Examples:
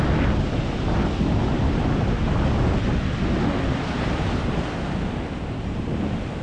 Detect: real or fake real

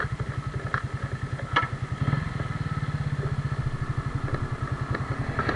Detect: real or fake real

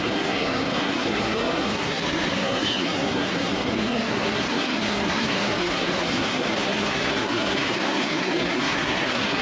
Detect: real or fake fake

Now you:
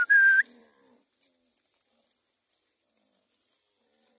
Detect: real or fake fake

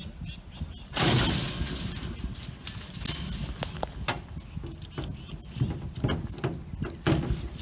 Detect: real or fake real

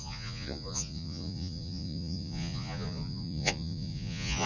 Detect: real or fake fake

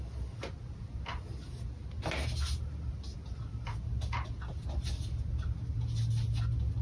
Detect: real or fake real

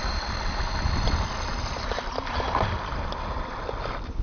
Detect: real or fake real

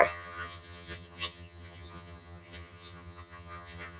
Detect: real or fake fake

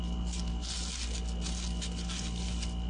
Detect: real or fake real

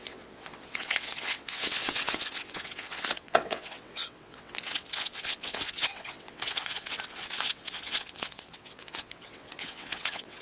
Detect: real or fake fake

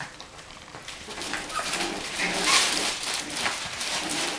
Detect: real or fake fake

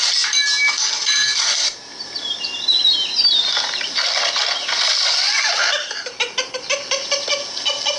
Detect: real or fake real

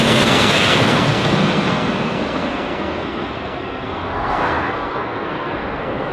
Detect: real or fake fake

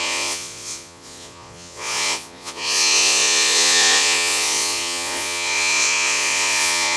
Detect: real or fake fake